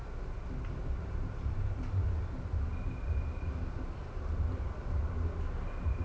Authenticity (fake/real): real